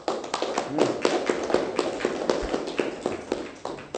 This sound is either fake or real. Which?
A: real